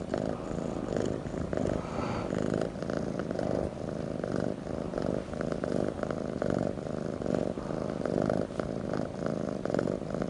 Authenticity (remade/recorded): recorded